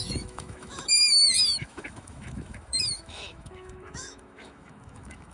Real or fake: fake